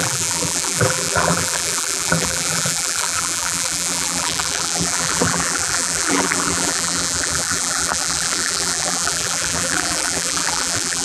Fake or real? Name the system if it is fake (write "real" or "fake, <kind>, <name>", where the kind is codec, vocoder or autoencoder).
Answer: fake, vocoder, BigVGAN v2